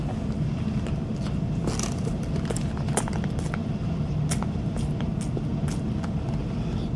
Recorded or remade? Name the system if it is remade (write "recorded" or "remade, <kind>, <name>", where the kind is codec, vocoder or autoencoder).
recorded